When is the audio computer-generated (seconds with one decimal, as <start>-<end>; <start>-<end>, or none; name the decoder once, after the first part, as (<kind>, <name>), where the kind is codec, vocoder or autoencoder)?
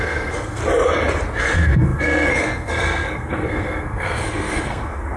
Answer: 0.0-0.6 (codec, SNAC); 1.4-5.2